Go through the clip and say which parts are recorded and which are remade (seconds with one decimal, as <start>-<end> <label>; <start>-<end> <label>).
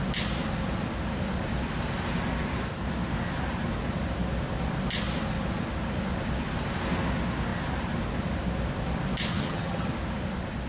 0.0-9.3 recorded; 9.3-9.9 remade; 9.9-10.7 recorded